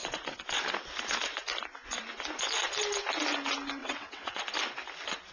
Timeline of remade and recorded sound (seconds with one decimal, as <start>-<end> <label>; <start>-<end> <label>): 0.0-3.8 recorded; 3.8-4.4 remade; 4.4-5.3 recorded